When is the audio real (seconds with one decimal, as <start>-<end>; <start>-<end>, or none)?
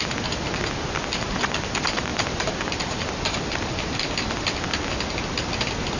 0.0-2.1; 4.1-6.0